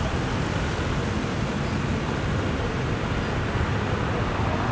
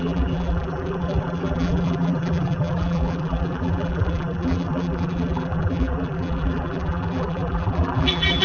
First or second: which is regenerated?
second